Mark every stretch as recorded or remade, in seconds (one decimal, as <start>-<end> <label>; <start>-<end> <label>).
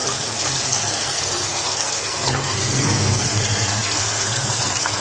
0.0-5.0 remade